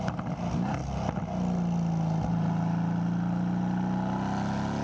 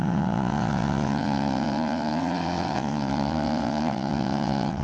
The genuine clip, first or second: first